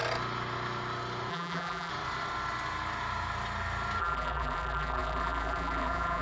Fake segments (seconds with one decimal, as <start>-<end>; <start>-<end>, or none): 1.3-1.9; 4.0-6.2